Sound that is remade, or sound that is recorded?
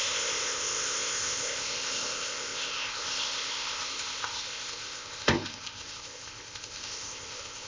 remade